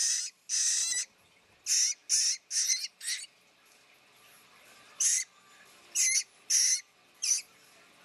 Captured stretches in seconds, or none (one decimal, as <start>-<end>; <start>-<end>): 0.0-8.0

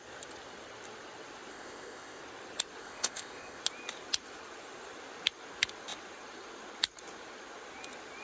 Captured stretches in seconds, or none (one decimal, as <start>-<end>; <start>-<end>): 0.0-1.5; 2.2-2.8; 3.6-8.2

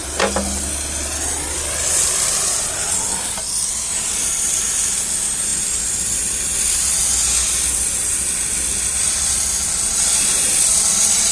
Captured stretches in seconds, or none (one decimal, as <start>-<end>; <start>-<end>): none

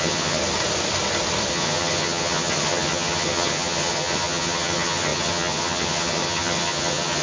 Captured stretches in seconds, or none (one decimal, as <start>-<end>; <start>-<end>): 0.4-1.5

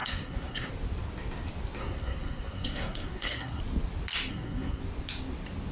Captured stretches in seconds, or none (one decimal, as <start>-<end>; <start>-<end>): 0.7-1.8; 3.6-4.3; 4.8-5.7

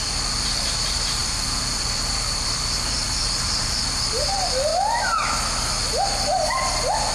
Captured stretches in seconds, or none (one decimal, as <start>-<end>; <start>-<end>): 4.7-7.1